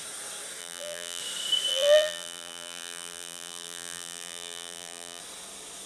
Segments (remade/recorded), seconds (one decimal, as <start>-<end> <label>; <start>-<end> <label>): 0.0-0.6 recorded; 0.6-1.2 remade; 1.2-1.7 recorded; 1.7-5.2 remade; 5.2-5.9 recorded